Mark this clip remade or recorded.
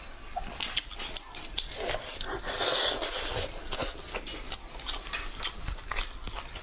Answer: recorded